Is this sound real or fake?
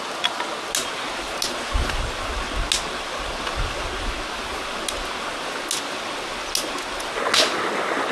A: real